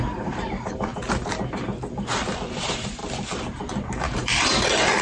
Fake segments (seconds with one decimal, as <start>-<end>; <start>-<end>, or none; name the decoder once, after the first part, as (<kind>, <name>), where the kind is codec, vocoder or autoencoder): 0.0-0.9 (vocoder, BigVGAN v2); 2.6-3.0; 4.0-5.0